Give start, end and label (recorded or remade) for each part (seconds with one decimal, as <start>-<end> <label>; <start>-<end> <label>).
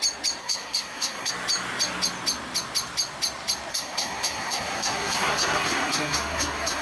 0.0-0.4 recorded; 0.4-1.3 remade; 1.3-3.7 recorded; 3.7-6.8 remade